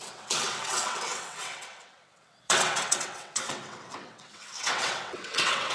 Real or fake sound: fake